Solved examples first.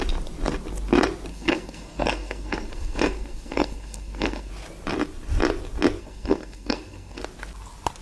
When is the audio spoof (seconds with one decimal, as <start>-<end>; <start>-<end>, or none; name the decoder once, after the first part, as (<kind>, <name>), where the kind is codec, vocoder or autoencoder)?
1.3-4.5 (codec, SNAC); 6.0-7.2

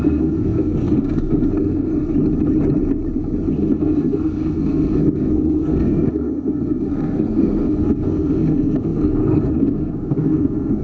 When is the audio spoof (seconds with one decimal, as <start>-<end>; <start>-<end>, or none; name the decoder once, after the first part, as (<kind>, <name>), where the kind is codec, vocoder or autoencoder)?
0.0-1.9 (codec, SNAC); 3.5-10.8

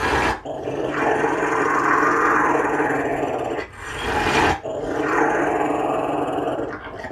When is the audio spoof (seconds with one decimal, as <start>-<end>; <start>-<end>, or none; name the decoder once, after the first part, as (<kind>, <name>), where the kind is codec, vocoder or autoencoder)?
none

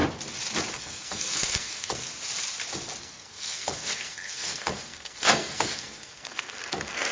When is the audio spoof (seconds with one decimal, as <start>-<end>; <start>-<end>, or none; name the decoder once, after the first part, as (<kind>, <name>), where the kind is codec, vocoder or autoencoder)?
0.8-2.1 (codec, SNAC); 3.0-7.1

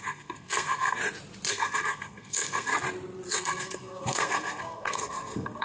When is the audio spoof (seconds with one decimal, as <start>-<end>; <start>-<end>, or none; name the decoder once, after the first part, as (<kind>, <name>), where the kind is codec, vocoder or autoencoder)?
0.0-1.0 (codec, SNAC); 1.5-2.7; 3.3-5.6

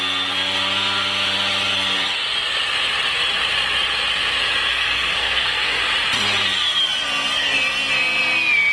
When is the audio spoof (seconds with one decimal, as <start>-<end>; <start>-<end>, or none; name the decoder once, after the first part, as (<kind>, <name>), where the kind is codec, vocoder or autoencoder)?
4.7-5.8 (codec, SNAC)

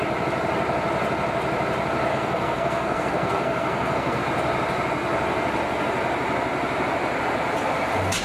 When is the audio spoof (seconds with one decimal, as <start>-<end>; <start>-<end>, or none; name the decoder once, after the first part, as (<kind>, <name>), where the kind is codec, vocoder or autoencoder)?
2.1-4.2 (codec, SNAC)